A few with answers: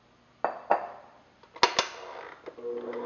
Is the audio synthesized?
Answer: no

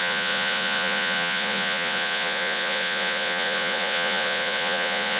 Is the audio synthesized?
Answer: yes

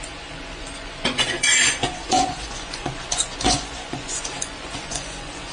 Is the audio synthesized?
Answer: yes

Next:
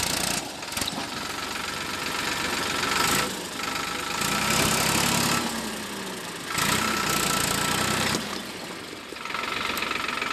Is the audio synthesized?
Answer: no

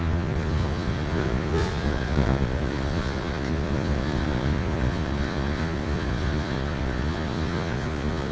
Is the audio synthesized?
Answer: yes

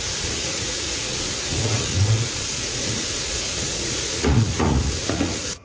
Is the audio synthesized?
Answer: yes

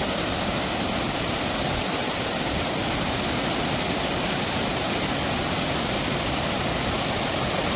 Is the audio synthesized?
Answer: no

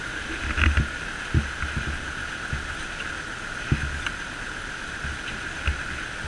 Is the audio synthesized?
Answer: no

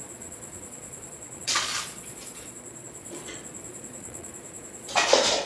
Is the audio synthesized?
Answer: yes